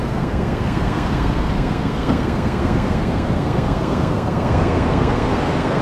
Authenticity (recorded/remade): remade